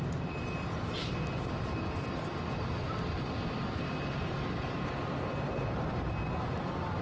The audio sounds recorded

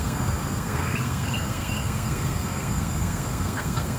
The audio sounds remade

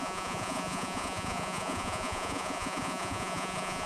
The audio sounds remade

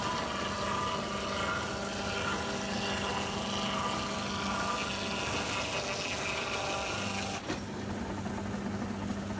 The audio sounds recorded